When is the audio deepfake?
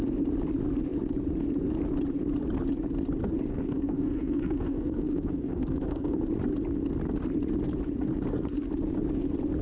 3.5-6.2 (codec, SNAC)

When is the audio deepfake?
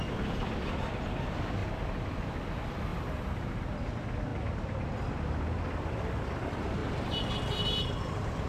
1.6-2.3 (vocoder, BigVGAN v2); 6.8-7.3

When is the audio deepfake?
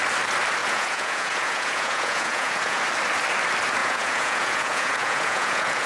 0.6-2.8 (vocoder, Vocos); 3.8-5.9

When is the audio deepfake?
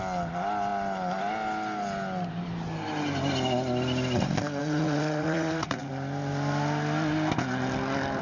4.6-5.9 (vocoder, Vocos)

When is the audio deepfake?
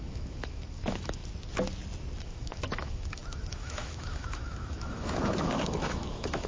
0.0-1.2 (autoencoder, DAC-VAE); 2.2-6.5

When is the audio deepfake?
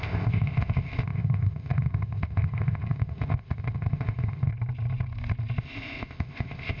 0.0-4.5 (codec, ZipCodec); 5.6-6.8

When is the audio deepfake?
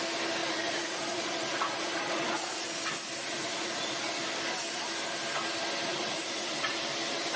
0.4-2.8 (vocoder, Vocos); 3.2-4.2; 5.9-6.8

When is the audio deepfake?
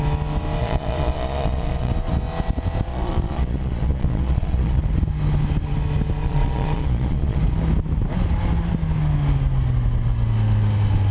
0.6-1.9 (vocoder, Vocos); 2.9-4.8; 6.2-7.4